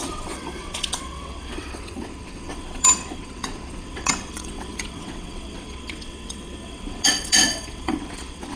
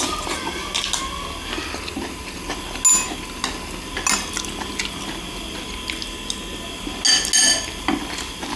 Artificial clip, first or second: first